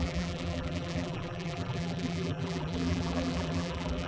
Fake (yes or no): yes